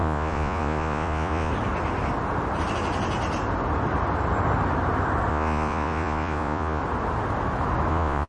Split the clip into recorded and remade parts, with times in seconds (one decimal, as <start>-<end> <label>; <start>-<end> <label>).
0.0-1.5 remade; 1.5-5.3 recorded; 5.3-6.8 remade; 6.8-7.9 recorded; 7.9-8.3 remade